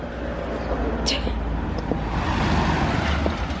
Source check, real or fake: real